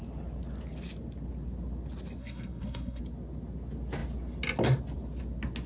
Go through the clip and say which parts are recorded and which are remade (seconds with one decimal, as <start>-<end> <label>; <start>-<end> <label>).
0.0-2.2 recorded; 2.2-3.0 remade; 3.0-5.7 recorded

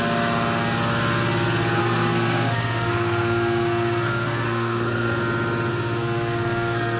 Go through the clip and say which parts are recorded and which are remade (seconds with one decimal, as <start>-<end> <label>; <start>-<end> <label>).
0.0-1.8 recorded; 1.8-5.2 remade; 5.2-5.7 recorded; 5.7-7.0 remade

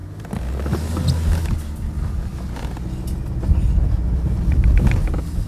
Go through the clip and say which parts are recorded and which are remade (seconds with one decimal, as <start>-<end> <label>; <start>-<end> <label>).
0.0-5.5 recorded

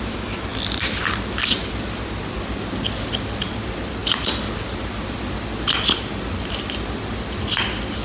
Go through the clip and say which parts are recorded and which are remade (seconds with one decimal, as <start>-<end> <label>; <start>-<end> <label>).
0.0-8.0 recorded

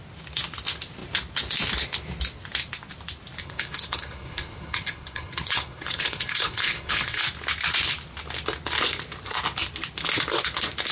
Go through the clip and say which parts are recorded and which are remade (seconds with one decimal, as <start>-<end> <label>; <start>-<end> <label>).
0.0-3.4 recorded; 3.4-7.2 remade; 7.2-10.9 recorded

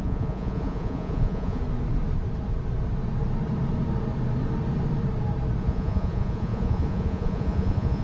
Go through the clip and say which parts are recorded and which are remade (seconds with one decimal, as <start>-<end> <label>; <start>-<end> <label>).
0.0-1.6 remade; 1.6-5.6 recorded; 5.6-8.0 remade

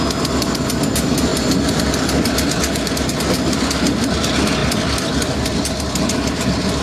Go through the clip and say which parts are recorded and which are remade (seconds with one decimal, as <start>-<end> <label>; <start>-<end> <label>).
0.0-6.8 recorded